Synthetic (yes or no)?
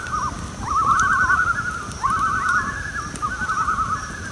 yes